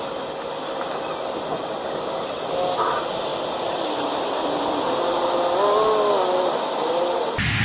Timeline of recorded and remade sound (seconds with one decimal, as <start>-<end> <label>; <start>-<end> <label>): 0.0-7.6 recorded